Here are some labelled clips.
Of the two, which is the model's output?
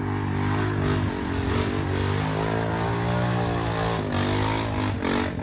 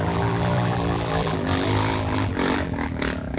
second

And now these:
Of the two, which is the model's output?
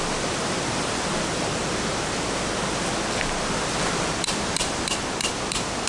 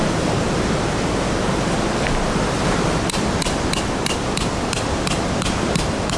second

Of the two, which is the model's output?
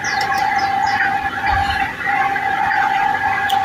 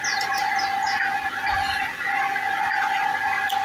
first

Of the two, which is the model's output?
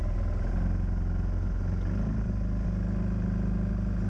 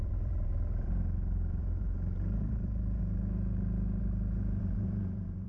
second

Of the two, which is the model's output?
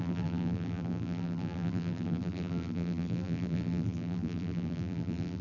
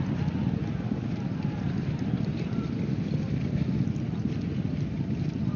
first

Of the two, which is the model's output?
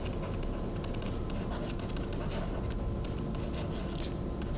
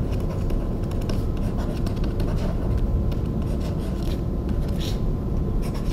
second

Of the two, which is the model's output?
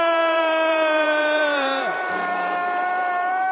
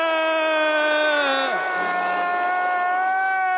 first